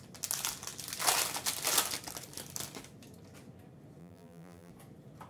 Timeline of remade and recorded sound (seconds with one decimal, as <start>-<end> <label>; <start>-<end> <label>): 0.0-4.0 recorded; 4.0-4.7 remade; 4.7-5.3 recorded